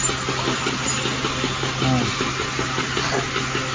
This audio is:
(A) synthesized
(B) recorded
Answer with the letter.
B